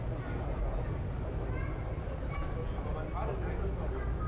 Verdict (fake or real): real